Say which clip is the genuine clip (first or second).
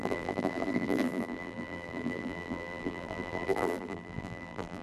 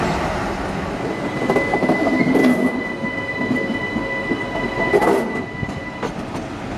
second